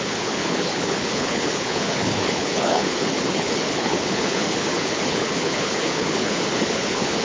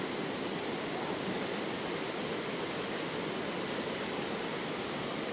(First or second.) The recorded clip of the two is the second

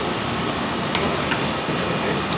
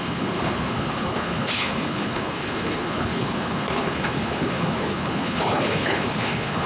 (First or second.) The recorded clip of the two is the first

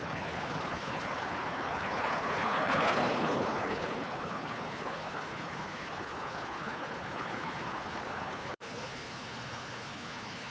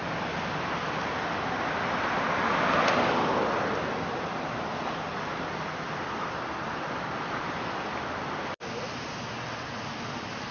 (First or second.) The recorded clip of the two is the second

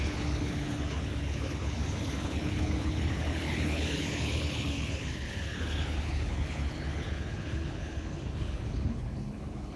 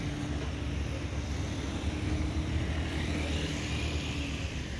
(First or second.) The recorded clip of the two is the second